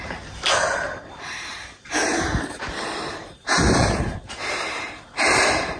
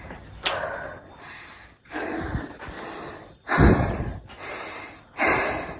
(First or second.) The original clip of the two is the second